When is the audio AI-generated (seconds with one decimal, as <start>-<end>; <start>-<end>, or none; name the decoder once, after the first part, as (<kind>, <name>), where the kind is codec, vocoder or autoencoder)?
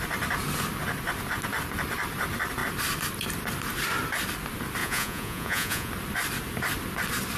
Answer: 4.8-5.9 (vocoder, Vocos)